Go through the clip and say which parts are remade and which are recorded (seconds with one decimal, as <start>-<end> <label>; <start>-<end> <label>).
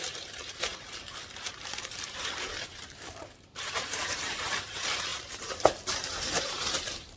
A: 0.0-7.2 remade